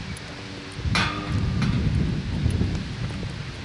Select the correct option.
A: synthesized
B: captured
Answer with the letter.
B